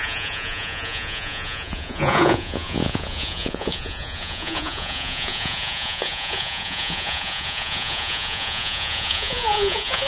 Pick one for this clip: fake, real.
fake